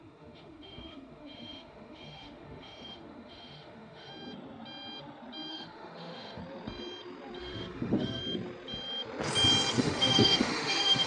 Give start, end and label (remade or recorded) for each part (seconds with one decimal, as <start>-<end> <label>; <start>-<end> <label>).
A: 0.0-4.1 remade; 4.1-5.5 recorded; 5.5-6.4 remade; 6.4-7.4 recorded; 7.4-8.2 remade; 8.2-9.8 recorded; 9.8-11.1 remade